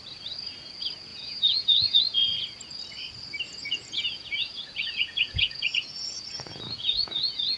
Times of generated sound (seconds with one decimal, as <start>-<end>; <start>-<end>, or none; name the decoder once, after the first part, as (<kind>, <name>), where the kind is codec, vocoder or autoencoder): 1.1-2.0 (vocoder, Vocos); 3.5-7.6